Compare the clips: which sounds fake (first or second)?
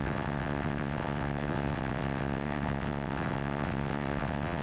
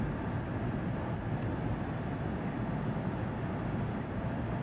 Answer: first